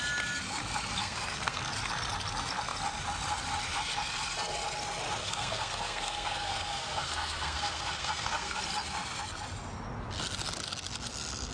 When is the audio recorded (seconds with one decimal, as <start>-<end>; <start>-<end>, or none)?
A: 0.0-1.0; 1.6-5.2; 8.6-11.5